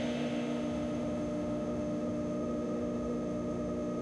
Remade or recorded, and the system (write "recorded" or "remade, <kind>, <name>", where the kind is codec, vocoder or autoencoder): remade, autoencoder, DAC-VAE